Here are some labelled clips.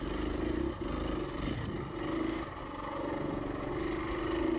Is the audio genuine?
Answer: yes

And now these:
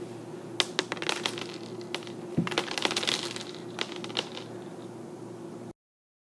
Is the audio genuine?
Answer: yes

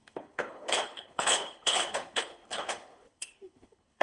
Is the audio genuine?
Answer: no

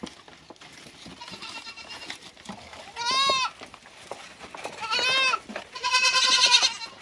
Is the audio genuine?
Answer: yes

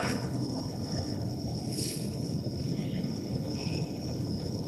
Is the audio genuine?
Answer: no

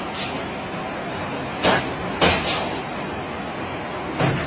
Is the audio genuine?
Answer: yes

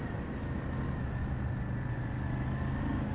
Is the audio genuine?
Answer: yes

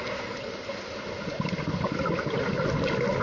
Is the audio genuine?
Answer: yes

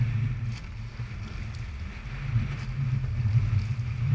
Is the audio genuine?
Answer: yes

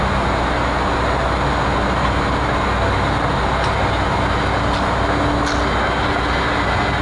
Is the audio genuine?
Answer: yes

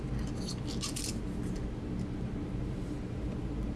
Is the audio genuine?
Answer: yes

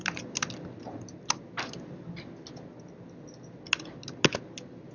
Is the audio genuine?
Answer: yes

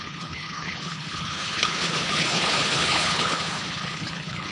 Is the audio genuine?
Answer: no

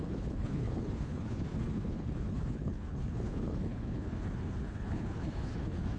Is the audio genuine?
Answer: no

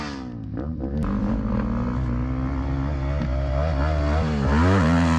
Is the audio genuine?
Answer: yes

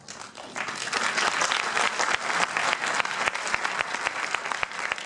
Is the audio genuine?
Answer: yes